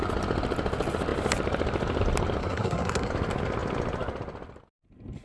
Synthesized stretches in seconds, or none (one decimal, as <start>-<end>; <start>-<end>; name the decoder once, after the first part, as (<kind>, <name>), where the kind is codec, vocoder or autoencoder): 2.4-3.1 (codec, SNAC)